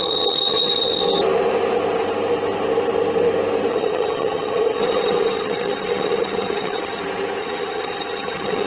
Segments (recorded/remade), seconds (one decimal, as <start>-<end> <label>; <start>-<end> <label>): 0.0-1.0 remade; 1.0-3.7 recorded; 3.7-7.0 remade; 7.0-7.4 recorded; 7.4-8.7 remade